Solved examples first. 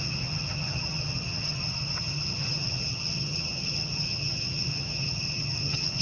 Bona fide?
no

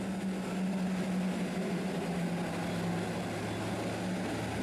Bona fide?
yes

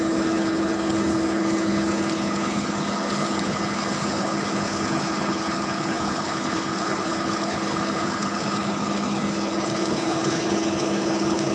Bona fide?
no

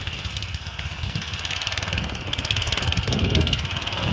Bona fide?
no